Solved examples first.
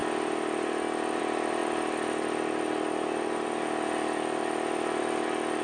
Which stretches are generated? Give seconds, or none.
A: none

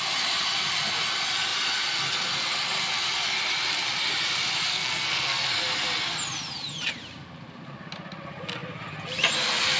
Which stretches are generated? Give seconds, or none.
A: 4.7-5.5 (codec, SNAC)

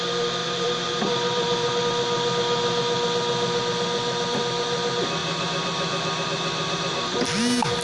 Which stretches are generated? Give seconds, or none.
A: 0.4-1.8 (vocoder, BigVGAN v2); 5.2-7.0